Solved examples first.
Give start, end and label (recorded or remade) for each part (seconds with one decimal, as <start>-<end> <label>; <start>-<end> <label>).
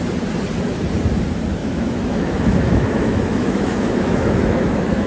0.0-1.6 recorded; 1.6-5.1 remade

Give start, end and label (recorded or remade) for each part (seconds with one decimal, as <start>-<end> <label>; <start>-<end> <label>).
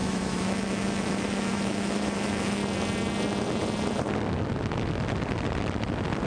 0.0-2.6 remade; 2.6-6.3 recorded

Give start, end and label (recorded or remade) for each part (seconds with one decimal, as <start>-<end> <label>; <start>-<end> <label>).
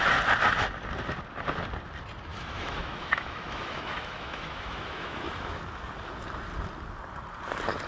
0.0-2.3 recorded; 2.3-5.6 remade; 5.6-7.9 recorded